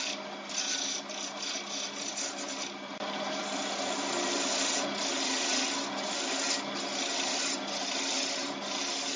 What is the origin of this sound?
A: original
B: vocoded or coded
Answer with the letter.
A